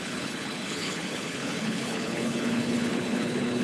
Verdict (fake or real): fake